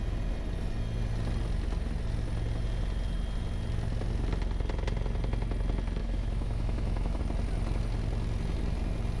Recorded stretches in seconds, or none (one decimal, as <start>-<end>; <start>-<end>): 0.0-6.0; 7.2-9.2

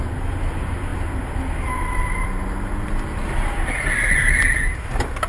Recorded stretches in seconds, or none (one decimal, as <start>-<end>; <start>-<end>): 0.0-5.3

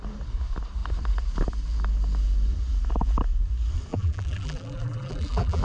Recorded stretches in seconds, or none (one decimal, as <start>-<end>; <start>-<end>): 0.0-3.9

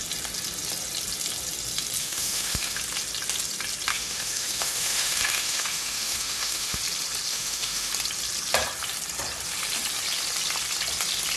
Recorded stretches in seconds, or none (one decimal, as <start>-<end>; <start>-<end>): 0.0-2.0; 2.8-3.9; 6.8-7.3; 7.9-11.4

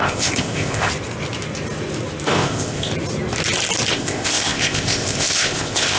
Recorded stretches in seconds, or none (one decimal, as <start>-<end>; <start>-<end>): 0.9-2.3; 2.9-3.9

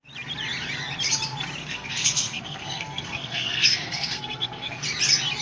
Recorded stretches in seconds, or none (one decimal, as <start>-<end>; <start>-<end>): 0.0-1.6; 4.8-5.4